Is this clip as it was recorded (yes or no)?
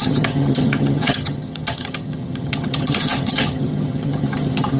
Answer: no